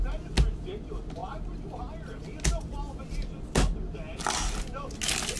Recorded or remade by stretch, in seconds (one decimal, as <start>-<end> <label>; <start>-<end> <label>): 0.0-5.4 recorded